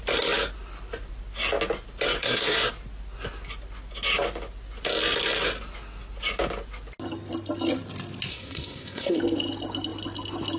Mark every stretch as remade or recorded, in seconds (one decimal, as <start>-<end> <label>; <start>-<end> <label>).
0.0-2.2 recorded; 2.2-2.7 remade; 2.7-8.3 recorded; 8.3-9.2 remade; 9.2-10.6 recorded